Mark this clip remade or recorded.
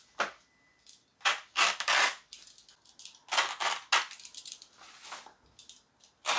recorded